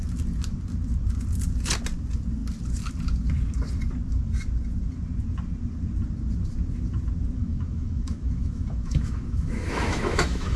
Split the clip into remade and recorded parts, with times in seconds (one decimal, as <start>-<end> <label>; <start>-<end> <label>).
0.0-7.4 recorded; 7.4-10.6 remade